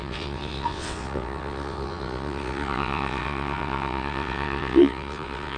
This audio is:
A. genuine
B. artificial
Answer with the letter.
B